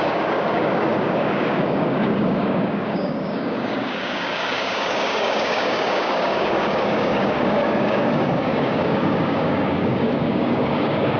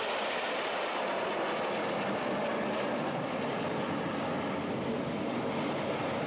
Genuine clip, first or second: second